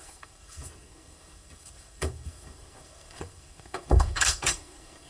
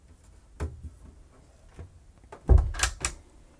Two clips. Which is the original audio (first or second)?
second